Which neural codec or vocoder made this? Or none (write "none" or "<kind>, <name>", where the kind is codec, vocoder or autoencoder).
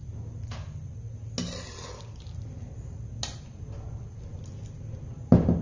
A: none